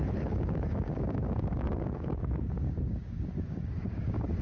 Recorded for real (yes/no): no